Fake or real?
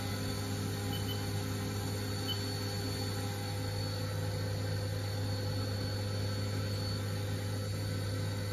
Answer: real